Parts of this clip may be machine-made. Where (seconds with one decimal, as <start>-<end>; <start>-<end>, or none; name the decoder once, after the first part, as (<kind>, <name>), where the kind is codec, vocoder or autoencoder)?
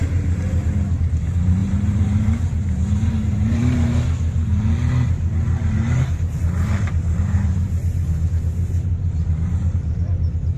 0.0-3.6 (vocoder, BigVGAN v2); 6.3-10.6